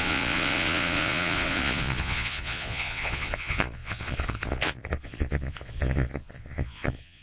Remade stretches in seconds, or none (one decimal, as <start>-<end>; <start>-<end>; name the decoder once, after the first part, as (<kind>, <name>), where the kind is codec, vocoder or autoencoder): 0.0-7.2 (vocoder, Vocos)